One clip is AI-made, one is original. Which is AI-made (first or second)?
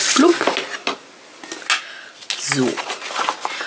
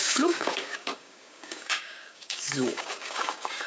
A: second